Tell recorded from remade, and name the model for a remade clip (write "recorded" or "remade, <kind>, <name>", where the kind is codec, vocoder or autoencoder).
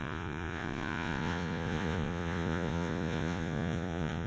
remade, vocoder, Vocos